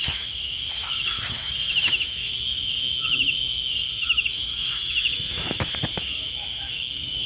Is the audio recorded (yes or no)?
no